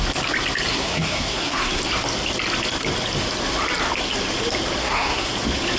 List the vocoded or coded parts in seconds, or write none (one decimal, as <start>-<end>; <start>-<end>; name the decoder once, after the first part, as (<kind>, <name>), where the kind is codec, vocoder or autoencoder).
0.7-1.8 (codec, SNAC); 4.8-5.3